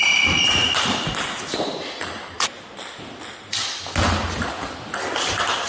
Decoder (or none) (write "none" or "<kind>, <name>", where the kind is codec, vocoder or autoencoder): none